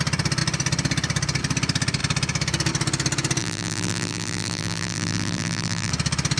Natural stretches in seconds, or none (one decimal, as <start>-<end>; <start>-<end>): 0.0-3.4; 5.9-6.4